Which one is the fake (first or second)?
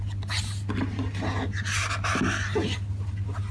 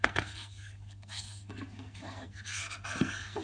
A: second